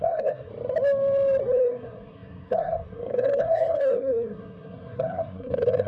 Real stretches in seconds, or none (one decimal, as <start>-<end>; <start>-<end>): 0.5-1.5